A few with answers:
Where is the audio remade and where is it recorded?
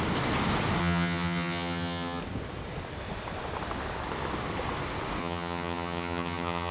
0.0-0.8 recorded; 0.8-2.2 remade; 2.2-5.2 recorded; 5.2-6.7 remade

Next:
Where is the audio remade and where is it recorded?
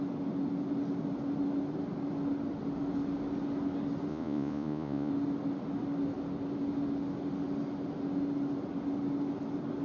0.0-4.1 recorded; 4.1-5.1 remade; 5.1-9.8 recorded